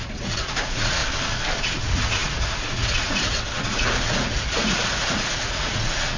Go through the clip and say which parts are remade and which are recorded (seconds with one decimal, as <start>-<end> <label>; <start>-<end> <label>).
0.0-1.0 remade; 1.0-1.6 recorded; 1.6-6.2 remade